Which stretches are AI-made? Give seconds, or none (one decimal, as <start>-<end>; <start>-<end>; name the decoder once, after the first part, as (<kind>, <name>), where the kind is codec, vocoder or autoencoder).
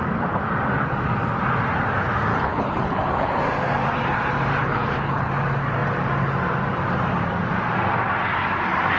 2.3-3.4 (codec, HILCodec); 4.6-5.3